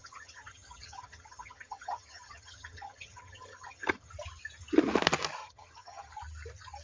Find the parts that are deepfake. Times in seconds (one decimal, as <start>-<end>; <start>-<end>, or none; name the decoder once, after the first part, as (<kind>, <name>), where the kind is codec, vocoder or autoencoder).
0.0-4.1 (vocoder, HiFi-GAN); 5.4-6.1